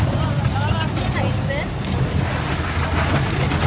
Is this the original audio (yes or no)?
yes